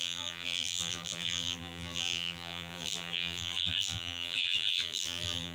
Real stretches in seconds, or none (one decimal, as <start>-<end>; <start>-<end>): none